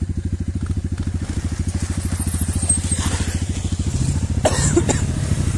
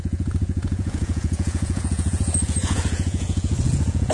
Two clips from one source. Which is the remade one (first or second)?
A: second